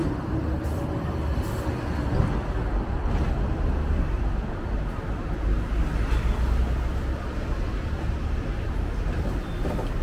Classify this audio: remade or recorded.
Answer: recorded